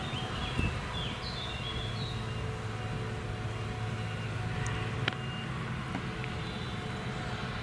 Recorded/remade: recorded